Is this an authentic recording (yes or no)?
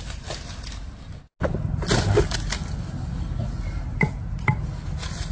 yes